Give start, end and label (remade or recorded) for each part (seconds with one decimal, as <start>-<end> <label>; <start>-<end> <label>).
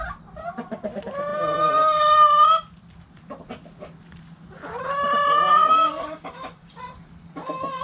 0.0-5.6 recorded; 5.6-6.8 remade; 6.8-7.8 recorded